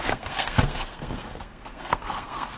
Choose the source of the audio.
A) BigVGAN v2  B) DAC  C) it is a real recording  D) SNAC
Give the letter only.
D